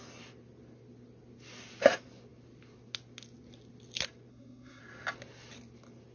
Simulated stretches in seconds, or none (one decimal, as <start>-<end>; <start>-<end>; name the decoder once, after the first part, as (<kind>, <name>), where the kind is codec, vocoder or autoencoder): 4.3-4.8 (codec, SNAC)